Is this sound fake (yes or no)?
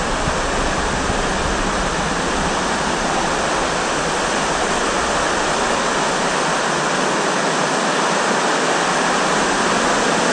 no